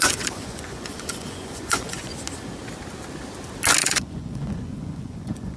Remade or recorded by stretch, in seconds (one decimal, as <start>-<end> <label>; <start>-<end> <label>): 0.0-2.1 remade; 2.1-3.8 recorded; 3.8-5.6 remade